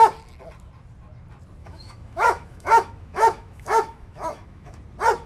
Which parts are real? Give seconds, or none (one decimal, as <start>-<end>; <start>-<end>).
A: 0.0-1.6; 4.8-5.3